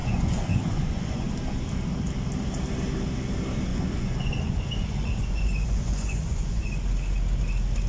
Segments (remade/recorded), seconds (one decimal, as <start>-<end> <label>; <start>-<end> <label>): 0.0-1.3 remade; 1.3-3.7 recorded; 3.7-6.6 remade; 6.6-7.9 recorded